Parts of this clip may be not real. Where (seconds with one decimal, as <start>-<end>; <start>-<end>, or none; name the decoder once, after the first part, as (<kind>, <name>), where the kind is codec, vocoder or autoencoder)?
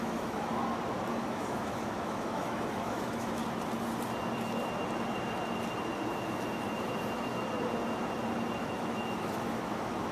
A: 0.0-0.6 (autoencoder, DAC-VAE); 1.2-3.4; 8.6-10.1